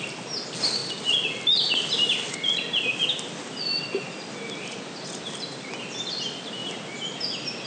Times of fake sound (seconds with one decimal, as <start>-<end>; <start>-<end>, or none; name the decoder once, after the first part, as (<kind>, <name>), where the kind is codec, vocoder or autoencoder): none